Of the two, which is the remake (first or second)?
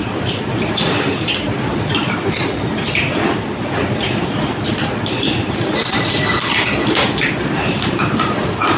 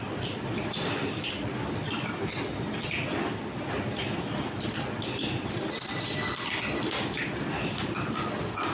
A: first